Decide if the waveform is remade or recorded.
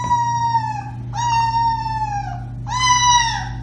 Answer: recorded